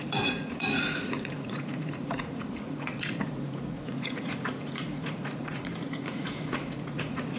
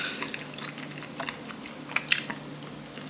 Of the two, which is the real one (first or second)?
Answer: second